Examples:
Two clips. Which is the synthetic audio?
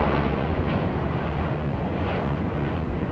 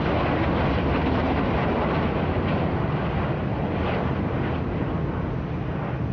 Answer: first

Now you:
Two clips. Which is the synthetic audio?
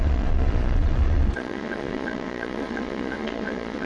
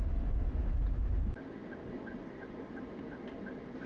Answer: first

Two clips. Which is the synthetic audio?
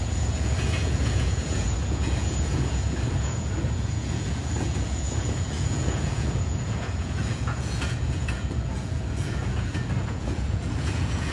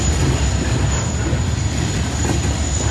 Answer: first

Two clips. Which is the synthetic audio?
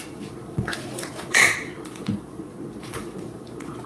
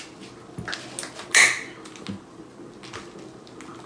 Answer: first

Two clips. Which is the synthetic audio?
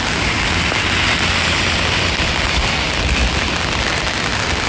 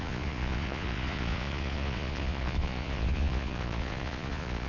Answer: second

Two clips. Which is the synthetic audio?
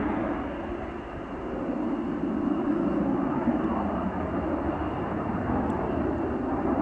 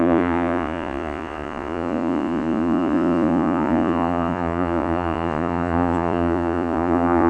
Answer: second